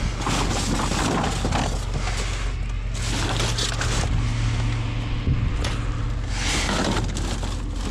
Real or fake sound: real